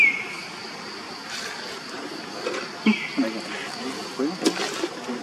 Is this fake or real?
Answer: real